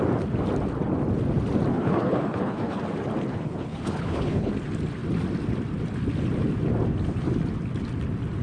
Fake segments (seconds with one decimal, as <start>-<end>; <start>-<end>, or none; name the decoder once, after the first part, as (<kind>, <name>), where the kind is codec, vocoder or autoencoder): 1.7-2.8 (codec, HILCodec); 3.3-4.5